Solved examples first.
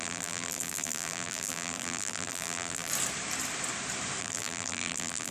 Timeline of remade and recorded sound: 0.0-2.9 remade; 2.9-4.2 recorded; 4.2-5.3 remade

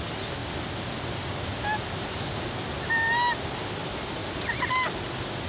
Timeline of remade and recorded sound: 0.0-4.2 recorded; 4.2-5.0 remade; 5.0-5.5 recorded

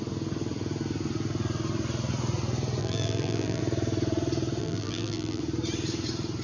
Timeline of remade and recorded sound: 0.0-2.8 recorded; 2.8-3.6 remade; 3.6-4.6 recorded; 4.6-5.4 remade; 5.4-6.4 recorded

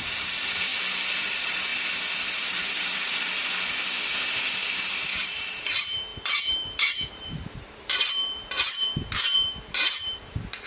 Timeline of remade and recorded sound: 0.0-0.7 remade; 0.7-1.2 recorded; 1.2-1.7 remade; 1.7-2.3 recorded; 2.3-10.7 remade

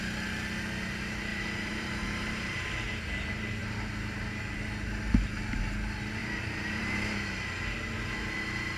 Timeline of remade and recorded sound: 0.0-1.3 recorded; 1.3-2.3 remade; 2.3-6.2 recorded; 6.2-7.3 remade; 7.3-8.8 recorded

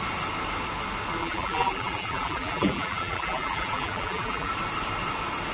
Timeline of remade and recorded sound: 0.0-1.2 recorded; 1.2-4.5 remade; 4.5-5.5 recorded

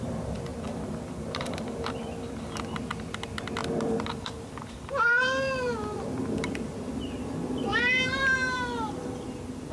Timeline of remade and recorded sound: 0.0-0.5 recorded; 0.5-2.4 remade; 2.4-3.6 recorded; 3.6-7.0 remade; 7.0-7.7 recorded; 7.7-9.7 remade